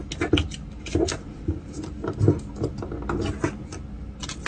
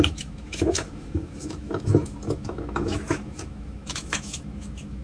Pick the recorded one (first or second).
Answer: first